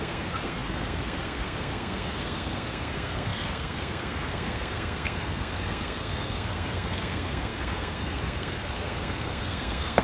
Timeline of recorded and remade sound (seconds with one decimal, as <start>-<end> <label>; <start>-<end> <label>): 0.0-10.0 remade